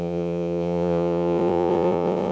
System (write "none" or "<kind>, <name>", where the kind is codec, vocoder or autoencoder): vocoder, Vocos